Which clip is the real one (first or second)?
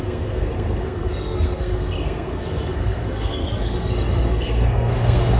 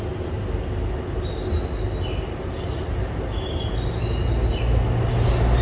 second